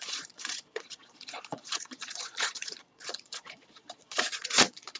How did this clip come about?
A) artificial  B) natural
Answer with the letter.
A